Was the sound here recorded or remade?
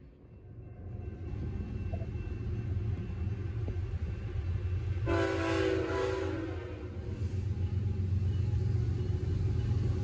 recorded